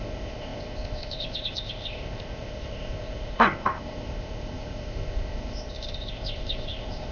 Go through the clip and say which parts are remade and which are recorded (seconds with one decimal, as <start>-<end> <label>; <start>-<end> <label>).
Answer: 0.0-7.1 remade